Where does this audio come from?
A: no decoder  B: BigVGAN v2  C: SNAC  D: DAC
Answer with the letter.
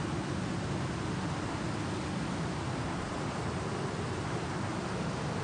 A